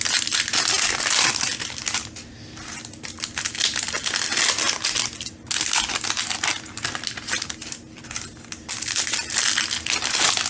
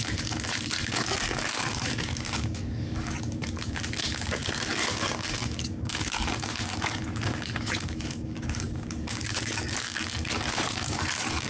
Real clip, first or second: first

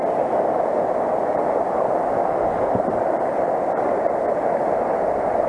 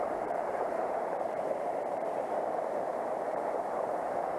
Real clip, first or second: first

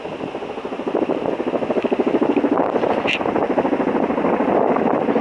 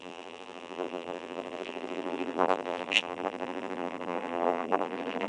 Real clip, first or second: first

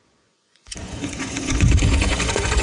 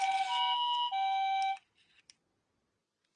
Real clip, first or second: second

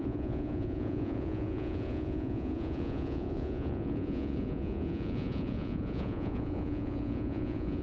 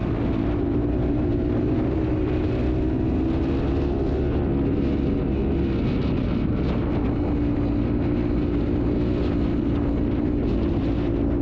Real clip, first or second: second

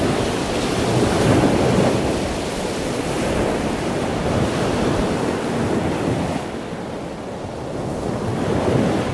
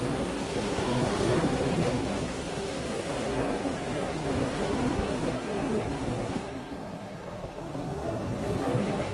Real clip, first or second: first